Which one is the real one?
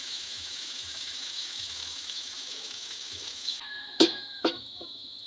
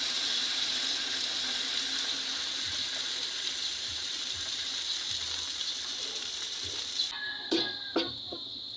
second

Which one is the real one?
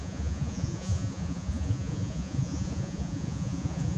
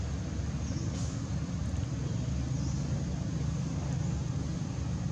second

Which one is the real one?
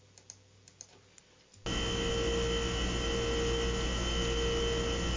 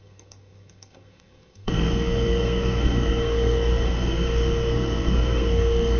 first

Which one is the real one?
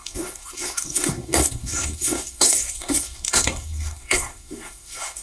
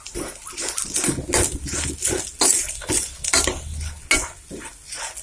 second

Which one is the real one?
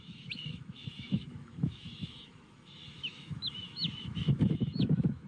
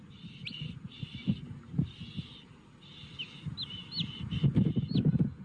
second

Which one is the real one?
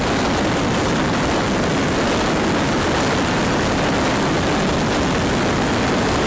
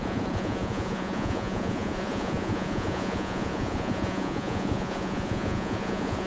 first